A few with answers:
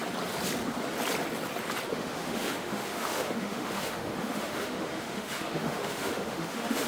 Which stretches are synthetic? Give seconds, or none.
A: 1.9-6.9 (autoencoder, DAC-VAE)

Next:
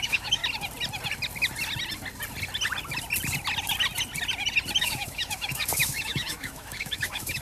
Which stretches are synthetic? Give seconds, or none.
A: 0.0-0.4 (autoencoder, DAC-VAE); 4.8-7.4